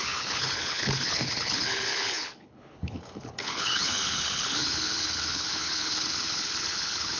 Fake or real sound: fake